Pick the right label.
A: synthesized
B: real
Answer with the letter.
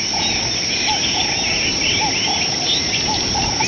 B